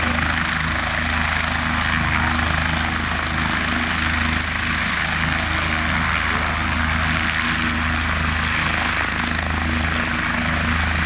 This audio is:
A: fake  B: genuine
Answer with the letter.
B